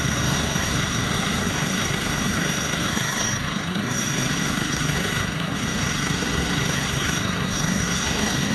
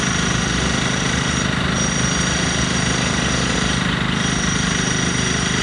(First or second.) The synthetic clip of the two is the first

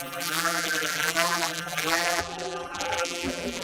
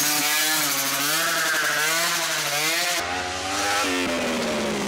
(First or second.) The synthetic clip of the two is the first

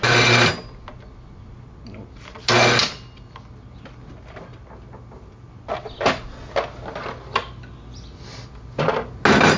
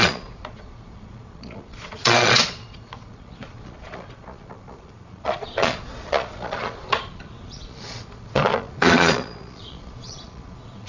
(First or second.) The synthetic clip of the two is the second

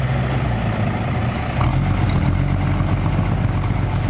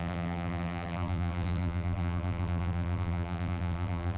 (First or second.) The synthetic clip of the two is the second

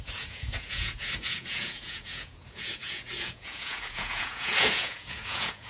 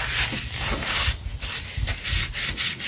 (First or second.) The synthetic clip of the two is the first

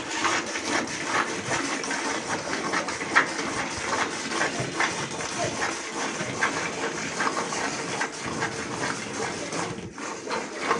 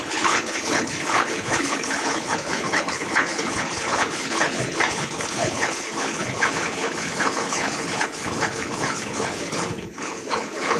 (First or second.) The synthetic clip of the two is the second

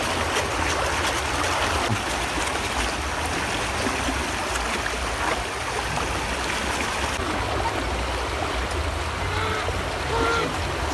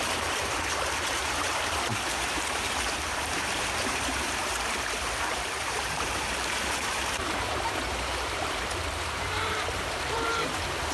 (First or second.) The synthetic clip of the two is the second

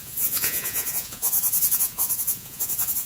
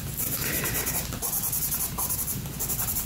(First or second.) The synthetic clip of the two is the first